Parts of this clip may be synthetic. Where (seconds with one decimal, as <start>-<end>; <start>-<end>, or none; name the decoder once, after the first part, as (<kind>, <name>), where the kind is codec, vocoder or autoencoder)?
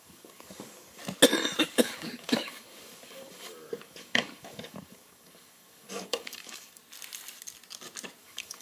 0.0-1.0 (codec, DAC); 1.6-6.8; 8.2-8.6